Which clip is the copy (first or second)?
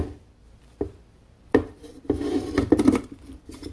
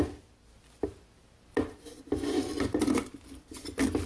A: first